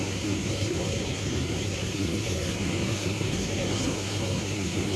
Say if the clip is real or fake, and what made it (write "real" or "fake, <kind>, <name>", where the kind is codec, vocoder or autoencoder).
fake, codec, SNAC